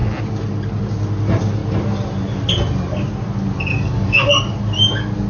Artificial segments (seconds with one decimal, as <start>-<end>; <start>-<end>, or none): 3.7-4.3